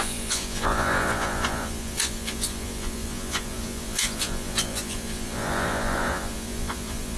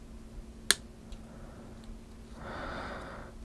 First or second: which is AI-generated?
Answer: first